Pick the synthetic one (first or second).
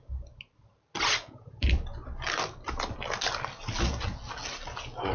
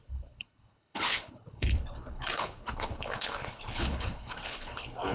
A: second